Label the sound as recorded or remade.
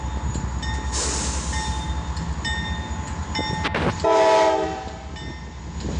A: recorded